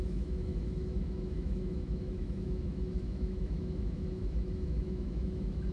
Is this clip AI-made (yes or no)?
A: yes